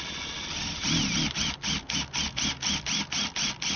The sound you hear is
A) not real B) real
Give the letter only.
B